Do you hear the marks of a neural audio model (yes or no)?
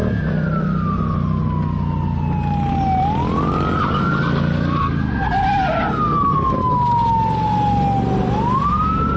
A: no